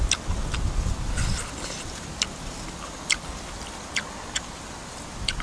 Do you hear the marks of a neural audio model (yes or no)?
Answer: no